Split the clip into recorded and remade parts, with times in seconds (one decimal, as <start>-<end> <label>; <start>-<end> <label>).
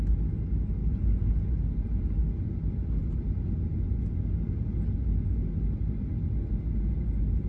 0.0-7.5 recorded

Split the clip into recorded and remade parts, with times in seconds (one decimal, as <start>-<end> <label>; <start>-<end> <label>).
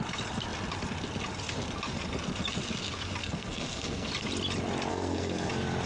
0.0-3.2 recorded; 3.2-4.1 remade; 4.1-4.9 recorded; 4.9-5.5 remade; 5.5-5.9 recorded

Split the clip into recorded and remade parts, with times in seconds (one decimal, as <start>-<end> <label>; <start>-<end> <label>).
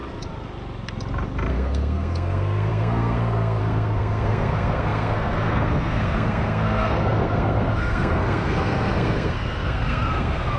0.0-1.5 recorded; 1.5-10.6 remade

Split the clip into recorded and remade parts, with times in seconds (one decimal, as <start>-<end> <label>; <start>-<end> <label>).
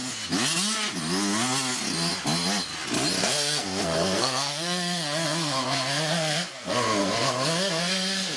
0.0-3.2 recorded; 3.2-8.4 remade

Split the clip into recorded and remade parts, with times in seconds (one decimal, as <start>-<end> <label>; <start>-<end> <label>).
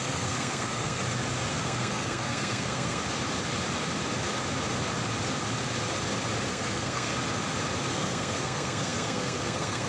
0.0-1.0 remade; 1.0-1.5 recorded; 1.5-3.0 remade; 3.0-6.5 recorded; 6.5-7.1 remade; 7.1-7.9 recorded; 7.9-9.9 remade